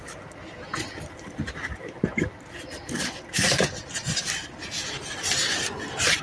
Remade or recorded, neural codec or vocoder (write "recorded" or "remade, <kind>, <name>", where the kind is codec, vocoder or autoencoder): recorded